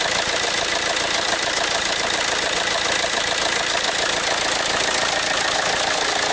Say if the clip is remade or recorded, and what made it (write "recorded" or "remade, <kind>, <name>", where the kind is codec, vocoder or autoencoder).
recorded